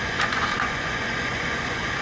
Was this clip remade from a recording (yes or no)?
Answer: yes